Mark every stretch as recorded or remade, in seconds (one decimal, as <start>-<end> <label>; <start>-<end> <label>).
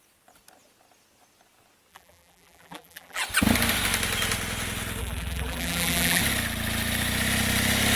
0.0-1.9 recorded; 1.9-3.2 remade; 3.2-5.0 recorded; 5.0-6.2 remade; 6.2-8.0 recorded